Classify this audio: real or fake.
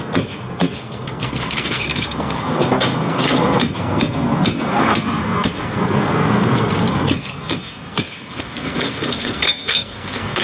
fake